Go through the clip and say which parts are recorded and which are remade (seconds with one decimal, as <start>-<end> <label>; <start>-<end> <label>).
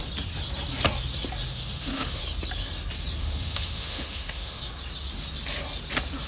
0.0-1.5 recorded; 1.5-2.2 remade; 2.2-3.2 recorded; 3.2-4.6 remade; 4.6-6.3 recorded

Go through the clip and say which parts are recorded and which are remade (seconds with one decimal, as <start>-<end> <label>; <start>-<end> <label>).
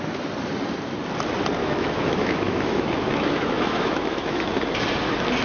0.0-1.6 recorded; 1.6-4.5 remade; 4.5-5.4 recorded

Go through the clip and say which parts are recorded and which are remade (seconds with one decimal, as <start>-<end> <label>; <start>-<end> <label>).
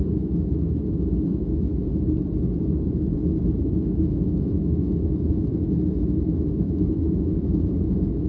0.0-1.7 remade; 1.7-3.6 recorded; 3.6-8.3 remade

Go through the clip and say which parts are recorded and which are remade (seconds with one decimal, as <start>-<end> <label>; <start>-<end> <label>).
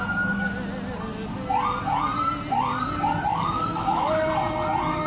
0.0-3.3 recorded; 3.3-4.3 remade; 4.3-5.1 recorded